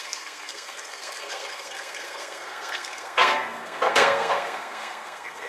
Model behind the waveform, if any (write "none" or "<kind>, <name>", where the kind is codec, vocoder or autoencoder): codec, SNAC